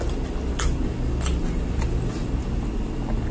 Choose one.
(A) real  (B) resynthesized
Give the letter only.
A